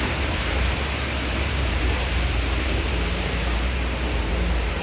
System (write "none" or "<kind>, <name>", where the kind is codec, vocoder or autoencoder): vocoder, BigVGAN v2